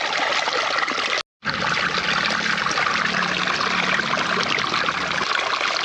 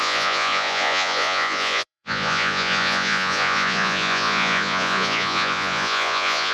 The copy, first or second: second